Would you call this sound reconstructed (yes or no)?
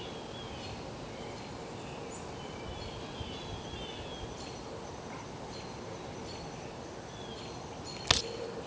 no